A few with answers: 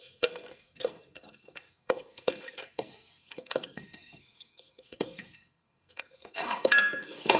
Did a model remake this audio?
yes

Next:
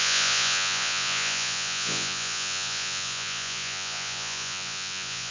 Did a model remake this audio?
yes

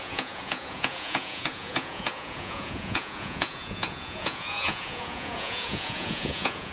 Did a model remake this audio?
yes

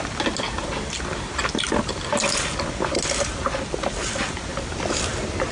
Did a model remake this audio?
no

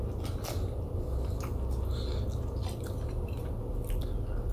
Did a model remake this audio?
no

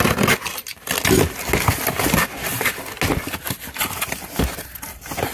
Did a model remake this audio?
no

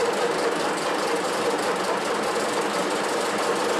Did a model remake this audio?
no